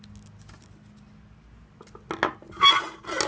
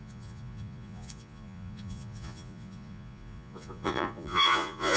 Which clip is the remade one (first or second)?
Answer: second